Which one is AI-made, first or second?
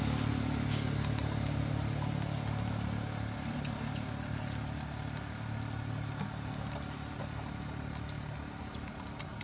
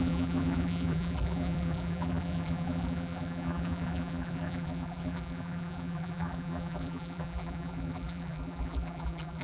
second